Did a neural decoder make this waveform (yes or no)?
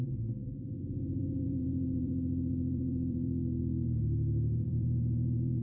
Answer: yes